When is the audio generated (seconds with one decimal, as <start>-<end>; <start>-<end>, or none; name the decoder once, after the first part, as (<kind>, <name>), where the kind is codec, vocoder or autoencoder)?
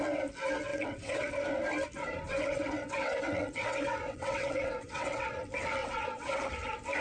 0.7-1.3 (vocoder, WaveNeXt); 2.3-5.3; 5.8-6.4